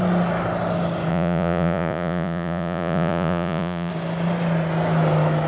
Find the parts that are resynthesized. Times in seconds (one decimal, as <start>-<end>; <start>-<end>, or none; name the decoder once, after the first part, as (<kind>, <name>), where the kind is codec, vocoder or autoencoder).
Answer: 1.1-3.9 (vocoder, Vocos)